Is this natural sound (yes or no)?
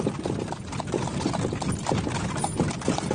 yes